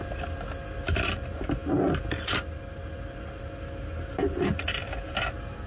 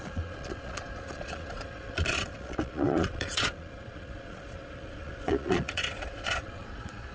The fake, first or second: second